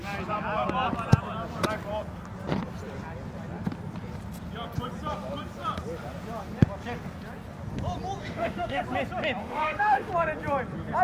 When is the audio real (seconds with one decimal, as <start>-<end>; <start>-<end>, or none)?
0.0-8.2; 8.8-9.4; 10.1-11.0